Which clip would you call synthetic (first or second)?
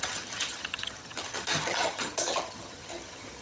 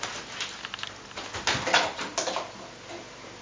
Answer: first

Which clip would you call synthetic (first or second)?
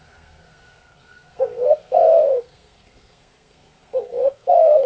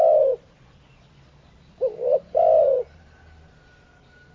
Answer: first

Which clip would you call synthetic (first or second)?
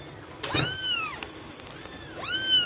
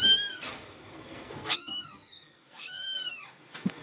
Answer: second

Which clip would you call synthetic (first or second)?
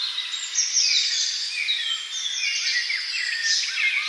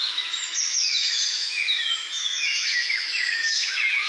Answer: second